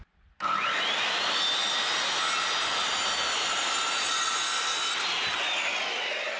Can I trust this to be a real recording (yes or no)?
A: yes